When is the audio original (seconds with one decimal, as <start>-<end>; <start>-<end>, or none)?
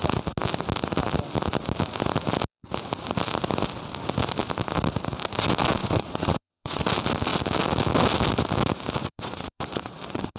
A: 0.0-5.8; 6.8-9.0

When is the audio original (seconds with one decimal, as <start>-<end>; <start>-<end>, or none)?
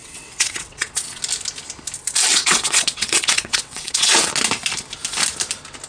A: 1.2-2.3; 4.3-5.9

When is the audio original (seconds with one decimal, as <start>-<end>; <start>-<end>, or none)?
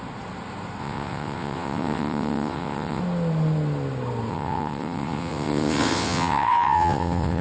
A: 0.0-0.8; 3.0-4.3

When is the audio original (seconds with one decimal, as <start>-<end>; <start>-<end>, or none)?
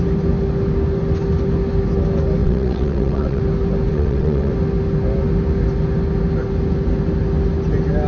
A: 0.0-2.4; 3.4-3.9; 4.5-8.1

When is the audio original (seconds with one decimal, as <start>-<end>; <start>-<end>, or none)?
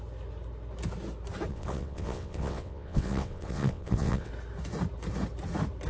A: 0.0-1.5; 4.3-5.9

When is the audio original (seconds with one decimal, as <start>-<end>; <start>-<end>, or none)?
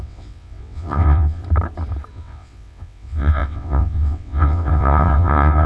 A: 1.4-2.1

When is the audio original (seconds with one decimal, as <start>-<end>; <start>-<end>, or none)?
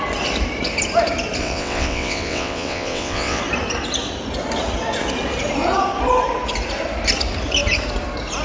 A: 0.0-1.4; 3.4-8.4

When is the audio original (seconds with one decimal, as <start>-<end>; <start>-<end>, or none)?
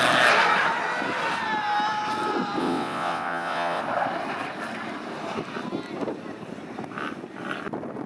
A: 0.0-2.6; 3.8-8.1